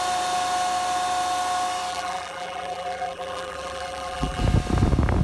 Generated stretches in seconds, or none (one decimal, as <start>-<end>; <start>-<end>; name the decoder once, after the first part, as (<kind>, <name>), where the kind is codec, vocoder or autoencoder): 1.9-4.4 (vocoder, BigVGAN v2)